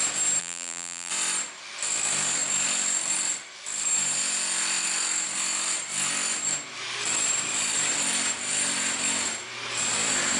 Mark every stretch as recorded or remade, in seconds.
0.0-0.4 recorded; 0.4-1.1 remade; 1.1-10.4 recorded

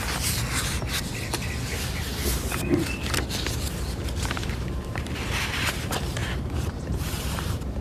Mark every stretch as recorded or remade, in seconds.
0.0-4.0 recorded; 4.0-5.4 remade; 5.4-6.2 recorded; 6.2-7.8 remade

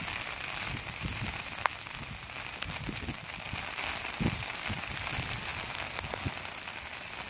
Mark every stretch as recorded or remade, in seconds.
0.0-7.3 recorded

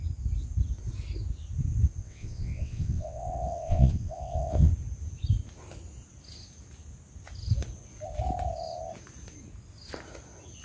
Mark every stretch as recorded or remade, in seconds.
0.0-2.0 recorded; 2.0-4.7 remade; 4.7-10.6 recorded